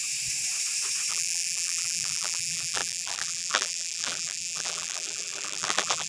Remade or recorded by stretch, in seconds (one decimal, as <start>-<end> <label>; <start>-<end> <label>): 0.0-1.1 recorded; 1.1-6.1 remade